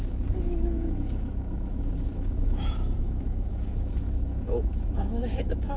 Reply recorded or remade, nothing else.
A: remade